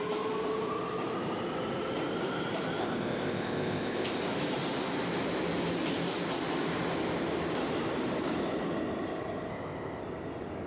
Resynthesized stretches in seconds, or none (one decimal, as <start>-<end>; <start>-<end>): 2.8-4.2; 9.5-10.0